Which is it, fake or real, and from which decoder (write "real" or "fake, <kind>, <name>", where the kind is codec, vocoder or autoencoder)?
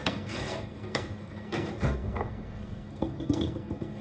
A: fake, codec, SNAC